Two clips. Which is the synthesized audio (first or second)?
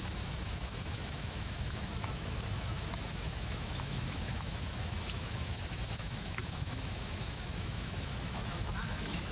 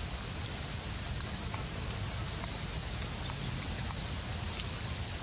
first